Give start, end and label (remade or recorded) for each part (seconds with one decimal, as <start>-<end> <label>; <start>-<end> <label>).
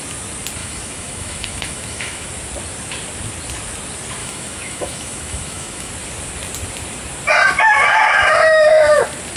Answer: 0.0-0.6 recorded; 0.6-2.3 remade; 2.3-4.2 recorded; 4.2-5.9 remade; 5.9-9.4 recorded